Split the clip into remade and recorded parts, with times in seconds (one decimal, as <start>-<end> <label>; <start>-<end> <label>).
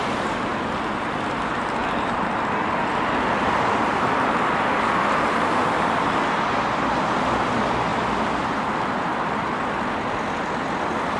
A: 0.0-11.2 recorded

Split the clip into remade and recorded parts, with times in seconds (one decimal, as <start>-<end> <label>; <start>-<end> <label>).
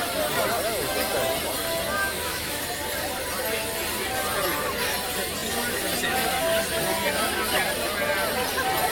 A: 0.0-2.0 recorded; 2.0-2.6 remade; 2.6-8.9 recorded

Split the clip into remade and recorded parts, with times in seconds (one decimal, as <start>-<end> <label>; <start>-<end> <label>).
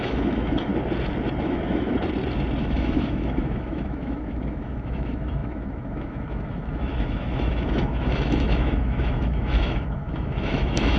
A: 0.0-0.7 remade; 0.7-1.4 recorded; 1.4-1.9 remade; 1.9-2.6 recorded; 2.6-11.0 remade